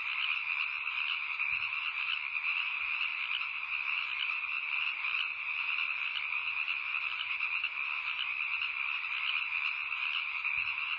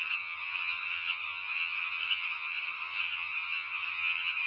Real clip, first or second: first